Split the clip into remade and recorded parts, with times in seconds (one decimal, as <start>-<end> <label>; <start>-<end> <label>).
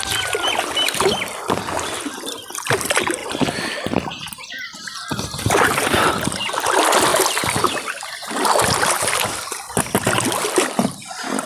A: 0.0-3.2 recorded; 3.2-6.0 remade; 6.0-11.5 recorded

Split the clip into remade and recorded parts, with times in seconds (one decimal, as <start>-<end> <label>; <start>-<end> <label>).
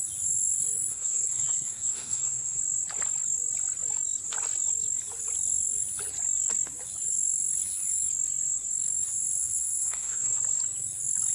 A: 0.0-0.9 recorded; 0.9-2.6 remade; 2.6-9.4 recorded; 9.4-10.4 remade; 10.4-11.3 recorded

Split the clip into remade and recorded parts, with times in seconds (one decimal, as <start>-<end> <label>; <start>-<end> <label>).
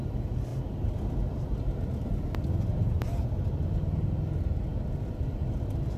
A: 0.0-0.5 recorded; 0.5-1.1 remade; 1.1-6.0 recorded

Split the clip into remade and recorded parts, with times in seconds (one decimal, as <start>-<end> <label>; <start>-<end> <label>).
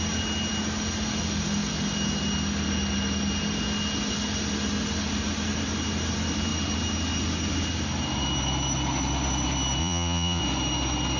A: 0.0-9.8 recorded; 9.8-10.4 remade; 10.4-11.2 recorded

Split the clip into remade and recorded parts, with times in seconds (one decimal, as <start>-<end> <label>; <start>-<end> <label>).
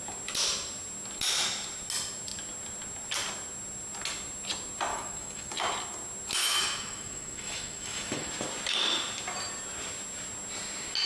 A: 0.0-4.9 recorded; 4.9-5.5 remade; 5.5-6.4 recorded; 6.4-8.3 remade; 8.3-11.1 recorded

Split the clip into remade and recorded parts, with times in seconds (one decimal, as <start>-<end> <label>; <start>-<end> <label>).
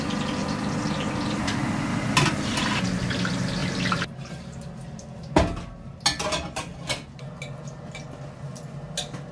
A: 0.0-9.3 recorded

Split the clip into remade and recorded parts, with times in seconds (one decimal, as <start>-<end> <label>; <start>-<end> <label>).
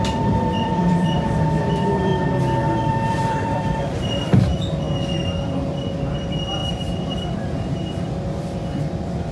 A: 0.0-2.1 remade; 2.1-2.7 recorded; 2.7-4.5 remade; 4.5-5.9 recorded; 5.9-9.3 remade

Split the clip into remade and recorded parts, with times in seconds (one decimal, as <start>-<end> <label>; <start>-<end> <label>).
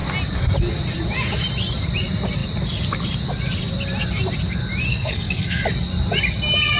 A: 0.0-4.9 recorded; 4.9-5.6 remade; 5.6-6.8 recorded